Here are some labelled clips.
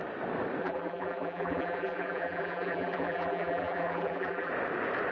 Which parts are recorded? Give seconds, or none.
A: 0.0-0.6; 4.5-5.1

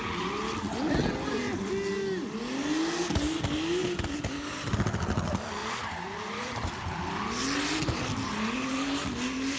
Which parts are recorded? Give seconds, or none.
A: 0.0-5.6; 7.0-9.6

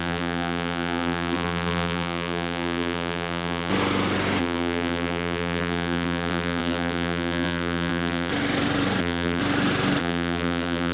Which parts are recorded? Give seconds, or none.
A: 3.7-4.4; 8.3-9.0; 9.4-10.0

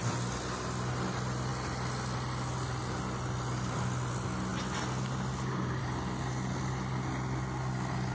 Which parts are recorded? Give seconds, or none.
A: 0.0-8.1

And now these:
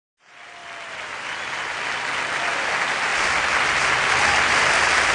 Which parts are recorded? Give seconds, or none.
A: 0.0-5.1